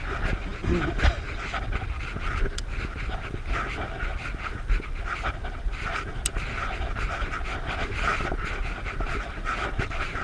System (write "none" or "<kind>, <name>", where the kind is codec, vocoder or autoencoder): none